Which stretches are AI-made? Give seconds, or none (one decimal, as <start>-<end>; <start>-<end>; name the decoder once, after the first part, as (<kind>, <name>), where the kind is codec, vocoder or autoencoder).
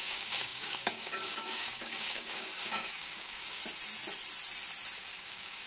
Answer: 0.0-3.6 (codec, DAC); 5.0-5.7